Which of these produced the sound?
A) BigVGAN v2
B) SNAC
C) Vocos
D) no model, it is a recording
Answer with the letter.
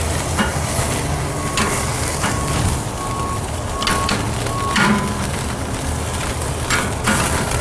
D